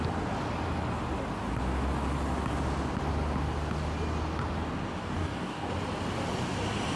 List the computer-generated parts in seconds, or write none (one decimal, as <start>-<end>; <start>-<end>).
5.0-5.7